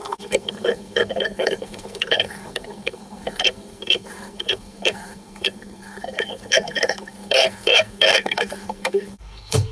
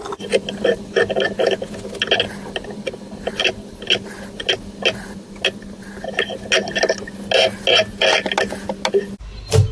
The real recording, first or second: second